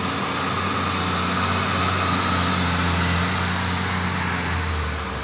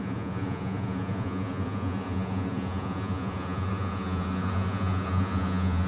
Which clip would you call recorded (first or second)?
first